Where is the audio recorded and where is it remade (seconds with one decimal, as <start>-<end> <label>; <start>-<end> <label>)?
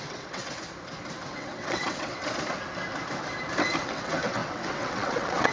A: 0.0-0.4 remade; 0.4-1.3 recorded; 1.3-2.2 remade; 2.2-3.8 recorded; 3.8-5.5 remade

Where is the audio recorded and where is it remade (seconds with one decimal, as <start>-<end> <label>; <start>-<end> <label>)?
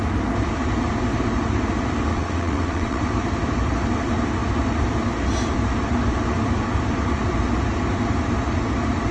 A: 0.0-2.1 recorded; 2.1-3.0 remade; 3.0-9.1 recorded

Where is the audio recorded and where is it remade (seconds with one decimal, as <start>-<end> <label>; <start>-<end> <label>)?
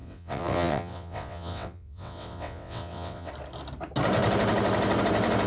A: 0.0-3.3 remade; 3.3-5.5 recorded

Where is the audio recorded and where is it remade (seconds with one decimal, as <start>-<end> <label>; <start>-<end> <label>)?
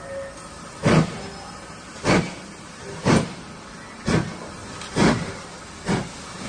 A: 0.0-6.5 recorded